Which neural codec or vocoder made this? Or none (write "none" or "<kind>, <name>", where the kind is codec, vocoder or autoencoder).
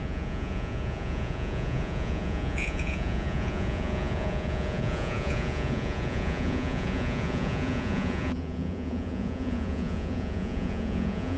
vocoder, Vocos